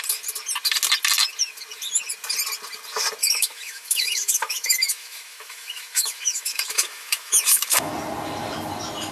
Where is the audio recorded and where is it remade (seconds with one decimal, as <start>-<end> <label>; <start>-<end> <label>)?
0.0-3.2 recorded; 3.2-7.9 remade; 7.9-9.1 recorded